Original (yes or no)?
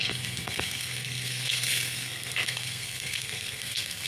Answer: no